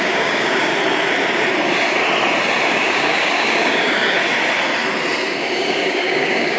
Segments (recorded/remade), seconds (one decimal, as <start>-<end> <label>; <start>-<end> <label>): 0.0-0.7 remade; 0.7-2.7 recorded; 2.7-4.2 remade; 4.2-5.6 recorded; 5.6-6.6 remade